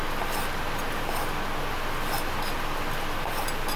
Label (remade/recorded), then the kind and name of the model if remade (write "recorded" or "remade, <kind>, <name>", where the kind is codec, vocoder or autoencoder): recorded